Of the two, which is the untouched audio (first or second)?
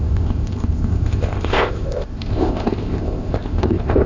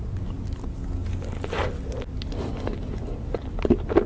second